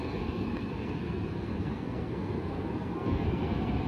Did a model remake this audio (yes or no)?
yes